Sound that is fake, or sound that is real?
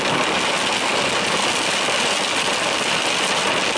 real